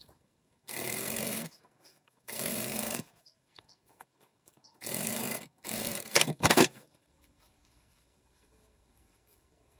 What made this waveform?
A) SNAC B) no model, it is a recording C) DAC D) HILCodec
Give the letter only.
A